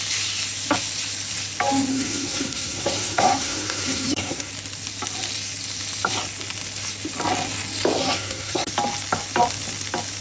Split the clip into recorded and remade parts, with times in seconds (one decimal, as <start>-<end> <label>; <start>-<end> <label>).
0.0-1.9 recorded; 1.9-4.5 remade; 4.5-8.0 recorded; 8.0-8.7 remade; 8.7-10.2 recorded